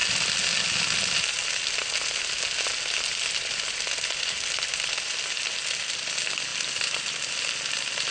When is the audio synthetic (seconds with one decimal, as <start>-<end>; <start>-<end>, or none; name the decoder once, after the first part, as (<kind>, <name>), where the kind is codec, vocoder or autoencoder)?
6.5-7.0 (vocoder, BigVGAN v2)